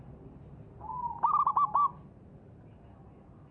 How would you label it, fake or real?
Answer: real